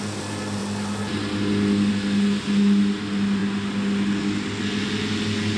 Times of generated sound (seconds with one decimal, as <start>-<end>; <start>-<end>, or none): none